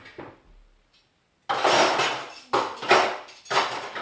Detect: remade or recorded recorded